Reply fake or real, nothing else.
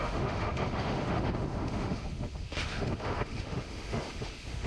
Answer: fake